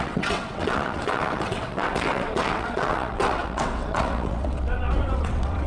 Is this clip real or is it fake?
fake